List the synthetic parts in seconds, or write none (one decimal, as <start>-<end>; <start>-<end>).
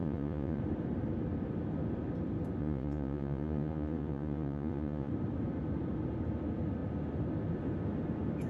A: 0.0-0.6; 2.6-5.1